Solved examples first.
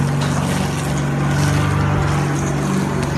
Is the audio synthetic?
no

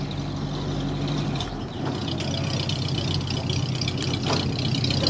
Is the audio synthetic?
no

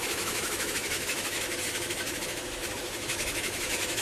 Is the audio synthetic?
yes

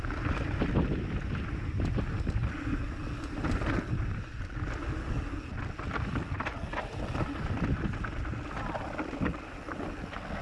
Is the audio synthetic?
no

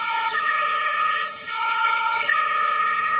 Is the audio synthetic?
yes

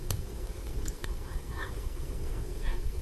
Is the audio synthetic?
yes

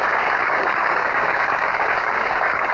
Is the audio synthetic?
yes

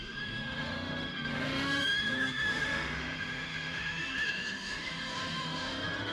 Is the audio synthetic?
yes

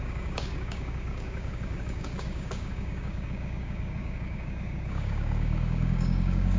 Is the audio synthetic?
yes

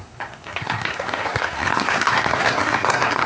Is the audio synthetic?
yes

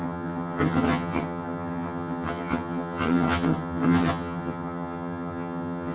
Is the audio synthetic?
yes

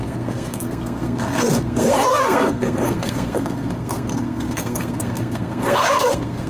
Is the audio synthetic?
yes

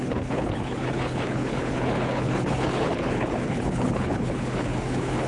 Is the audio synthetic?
yes